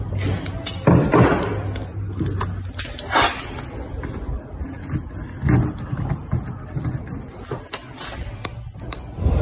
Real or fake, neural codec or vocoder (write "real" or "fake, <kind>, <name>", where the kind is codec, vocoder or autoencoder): real